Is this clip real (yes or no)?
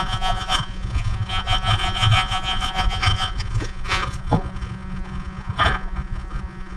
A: no